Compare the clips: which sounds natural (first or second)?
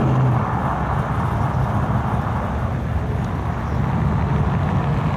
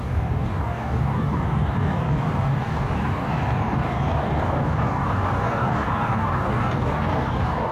first